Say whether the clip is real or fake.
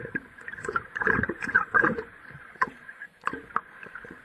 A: fake